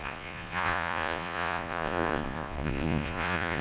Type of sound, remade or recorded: remade